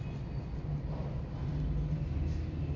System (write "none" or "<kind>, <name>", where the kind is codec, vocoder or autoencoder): none